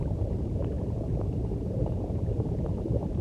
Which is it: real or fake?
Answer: fake